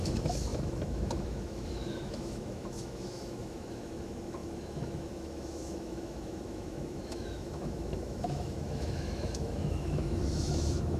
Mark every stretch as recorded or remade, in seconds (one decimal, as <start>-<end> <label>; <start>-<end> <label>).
0.0-11.0 remade